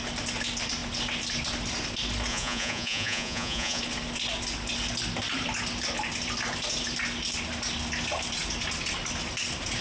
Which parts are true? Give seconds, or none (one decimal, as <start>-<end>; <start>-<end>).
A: 0.0-2.3; 3.8-9.8

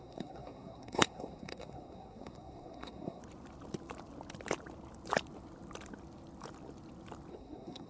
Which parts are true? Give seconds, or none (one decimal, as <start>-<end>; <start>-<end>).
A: 3.2-7.3

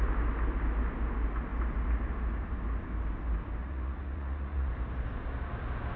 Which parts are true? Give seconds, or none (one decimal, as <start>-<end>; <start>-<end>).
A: 0.0-3.6; 4.7-6.0

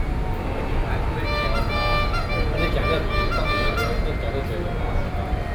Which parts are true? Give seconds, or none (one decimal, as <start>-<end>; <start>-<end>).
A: 0.0-5.5

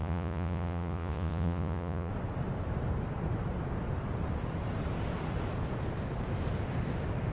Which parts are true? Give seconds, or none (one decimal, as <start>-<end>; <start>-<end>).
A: 2.1-7.3